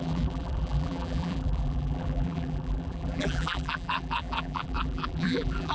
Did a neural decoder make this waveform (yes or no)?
yes